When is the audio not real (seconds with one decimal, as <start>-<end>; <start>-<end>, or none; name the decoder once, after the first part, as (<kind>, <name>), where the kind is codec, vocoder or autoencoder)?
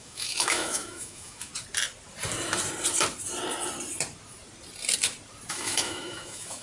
0.0-1.5 (autoencoder, DAC-VAE); 5.5-6.6